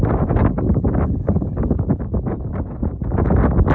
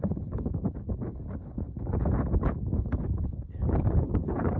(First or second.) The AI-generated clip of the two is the second